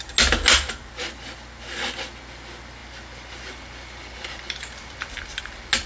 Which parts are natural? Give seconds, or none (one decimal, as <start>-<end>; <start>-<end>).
0.0-2.8; 5.4-5.9